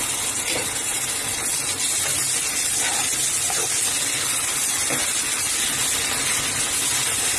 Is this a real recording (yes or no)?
yes